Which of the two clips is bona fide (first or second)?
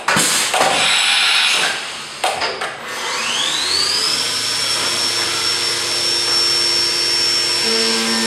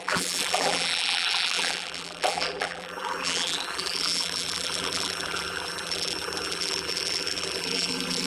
first